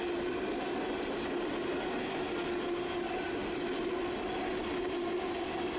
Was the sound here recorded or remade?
recorded